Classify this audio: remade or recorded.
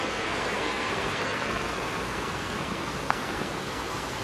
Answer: remade